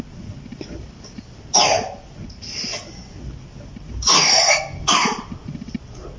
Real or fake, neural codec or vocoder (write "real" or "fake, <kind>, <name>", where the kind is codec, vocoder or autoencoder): real